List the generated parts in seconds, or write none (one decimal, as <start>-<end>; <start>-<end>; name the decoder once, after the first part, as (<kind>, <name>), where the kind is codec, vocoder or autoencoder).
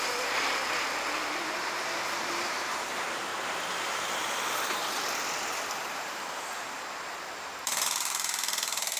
0.0-3.3 (vocoder, BigVGAN v2); 5.9-9.0